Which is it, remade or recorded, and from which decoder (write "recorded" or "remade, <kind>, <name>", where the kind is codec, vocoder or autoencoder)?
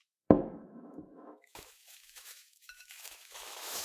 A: remade, autoencoder, DAC-VAE